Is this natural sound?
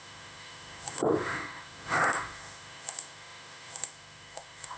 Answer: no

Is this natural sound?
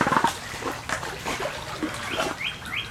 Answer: yes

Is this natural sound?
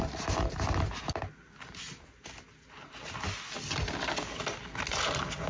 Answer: yes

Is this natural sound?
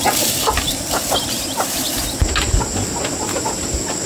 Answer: yes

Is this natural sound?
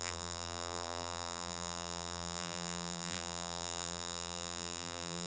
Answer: no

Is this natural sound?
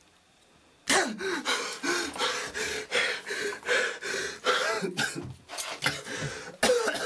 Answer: yes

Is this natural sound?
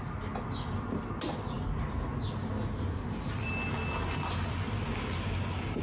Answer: yes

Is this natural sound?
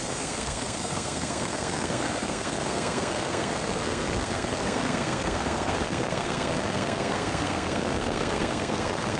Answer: no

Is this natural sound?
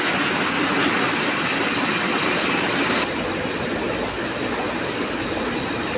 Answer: yes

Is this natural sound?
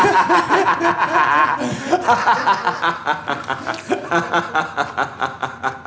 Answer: yes